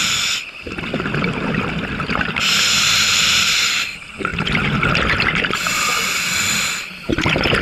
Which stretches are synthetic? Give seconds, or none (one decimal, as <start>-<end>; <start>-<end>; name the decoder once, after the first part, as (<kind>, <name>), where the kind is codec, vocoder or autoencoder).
none